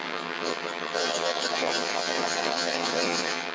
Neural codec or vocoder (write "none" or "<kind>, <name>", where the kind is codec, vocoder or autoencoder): vocoder, HiFi-GAN